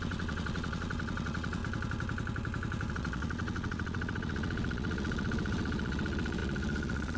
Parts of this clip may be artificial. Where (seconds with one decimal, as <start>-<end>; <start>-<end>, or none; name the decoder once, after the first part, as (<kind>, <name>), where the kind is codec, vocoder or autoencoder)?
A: 0.0-1.6 (vocoder, Vocos); 2.9-7.2